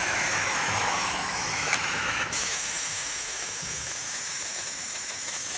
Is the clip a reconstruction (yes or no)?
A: yes